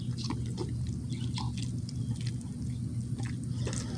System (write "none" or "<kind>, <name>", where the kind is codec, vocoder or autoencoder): none